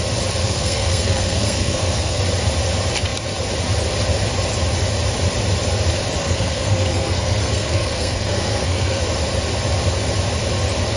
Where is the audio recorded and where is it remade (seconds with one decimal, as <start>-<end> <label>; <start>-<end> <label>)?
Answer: 0.0-0.4 recorded; 0.4-2.2 remade; 2.2-6.2 recorded; 6.2-9.0 remade; 9.0-11.0 recorded